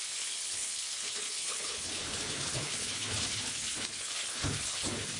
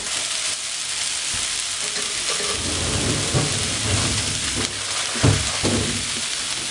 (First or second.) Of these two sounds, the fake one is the first